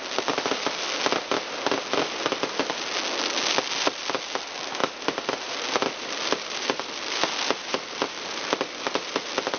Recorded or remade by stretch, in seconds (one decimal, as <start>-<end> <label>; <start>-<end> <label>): 0.0-4.8 recorded; 4.8-9.2 remade; 9.2-9.6 recorded